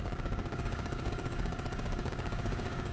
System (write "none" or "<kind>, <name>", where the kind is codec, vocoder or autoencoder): codec, DAC